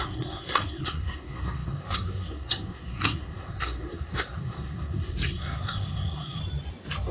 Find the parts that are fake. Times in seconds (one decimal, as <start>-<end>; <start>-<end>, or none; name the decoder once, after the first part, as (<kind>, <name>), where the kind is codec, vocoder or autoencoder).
0.0-6.4 (codec, SNAC)